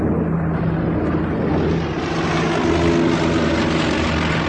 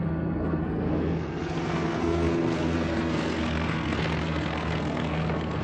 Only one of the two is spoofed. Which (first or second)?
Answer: second